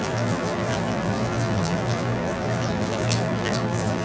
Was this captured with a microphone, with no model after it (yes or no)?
no